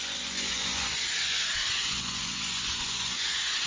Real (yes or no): no